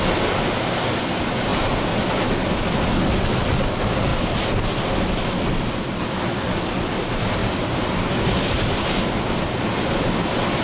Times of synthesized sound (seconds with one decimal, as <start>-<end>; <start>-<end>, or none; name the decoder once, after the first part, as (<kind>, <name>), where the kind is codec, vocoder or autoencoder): none